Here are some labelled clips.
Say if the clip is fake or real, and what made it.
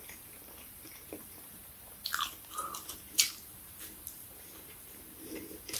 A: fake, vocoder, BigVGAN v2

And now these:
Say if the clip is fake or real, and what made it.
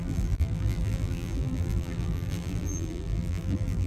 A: fake, vocoder, BigVGAN v2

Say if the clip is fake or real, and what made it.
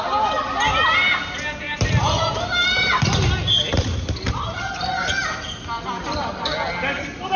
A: real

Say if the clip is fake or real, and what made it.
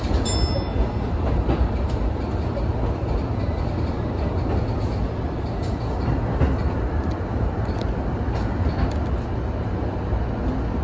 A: real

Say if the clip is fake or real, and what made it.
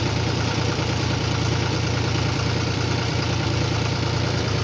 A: fake, vocoder, BigVGAN v2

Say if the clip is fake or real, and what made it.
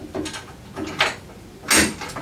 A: real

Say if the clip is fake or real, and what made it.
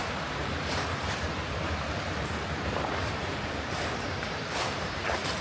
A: fake, vocoder, BigVGAN v2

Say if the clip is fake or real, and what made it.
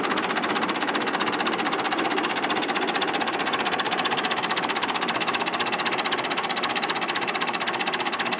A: real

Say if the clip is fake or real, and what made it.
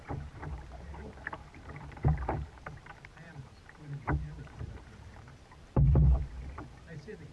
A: fake, vocoder, BigVGAN v2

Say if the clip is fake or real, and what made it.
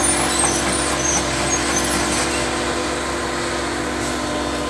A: real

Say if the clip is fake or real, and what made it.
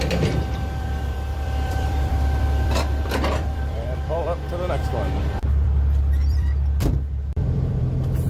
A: fake, vocoder, BigVGAN v2